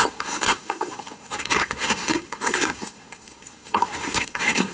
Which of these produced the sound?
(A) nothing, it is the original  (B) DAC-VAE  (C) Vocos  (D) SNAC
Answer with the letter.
D